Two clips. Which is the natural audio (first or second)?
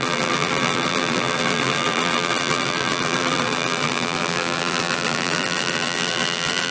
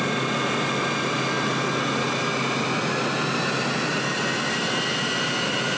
second